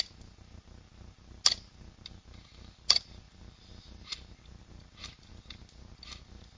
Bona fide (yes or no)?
yes